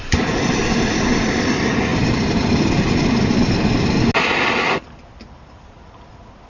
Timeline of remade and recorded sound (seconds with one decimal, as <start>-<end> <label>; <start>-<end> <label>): 0.0-6.5 recorded